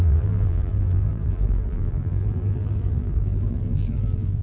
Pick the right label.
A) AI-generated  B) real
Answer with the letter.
A